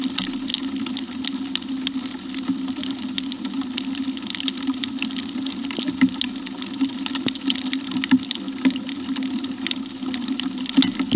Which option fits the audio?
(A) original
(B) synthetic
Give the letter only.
A